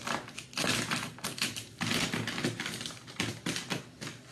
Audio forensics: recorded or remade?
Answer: recorded